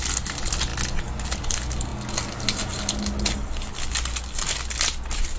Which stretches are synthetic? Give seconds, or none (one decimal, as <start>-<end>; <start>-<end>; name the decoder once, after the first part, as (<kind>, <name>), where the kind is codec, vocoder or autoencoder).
none